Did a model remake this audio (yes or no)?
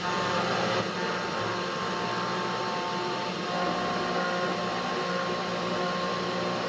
no